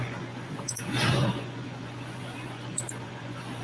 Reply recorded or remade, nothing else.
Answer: remade